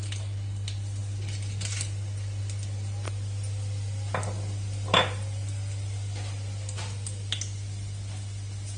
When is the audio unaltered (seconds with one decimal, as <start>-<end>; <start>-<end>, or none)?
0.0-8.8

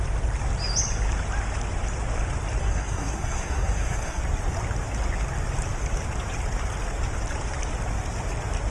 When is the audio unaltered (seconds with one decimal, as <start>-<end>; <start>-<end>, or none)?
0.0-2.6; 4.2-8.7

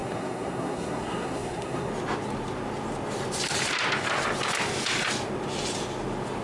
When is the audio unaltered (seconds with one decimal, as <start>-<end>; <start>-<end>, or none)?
1.9-6.4

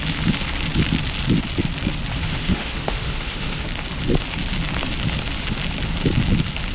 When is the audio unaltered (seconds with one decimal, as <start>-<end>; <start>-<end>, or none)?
0.0-2.2; 3.7-6.7

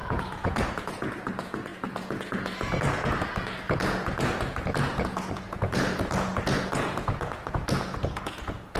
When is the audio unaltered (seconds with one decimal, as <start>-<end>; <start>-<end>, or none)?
none